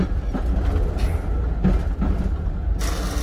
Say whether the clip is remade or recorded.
recorded